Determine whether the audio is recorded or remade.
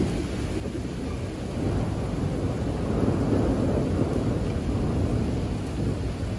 recorded